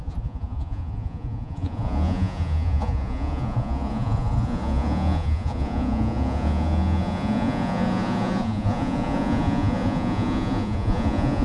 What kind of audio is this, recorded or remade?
remade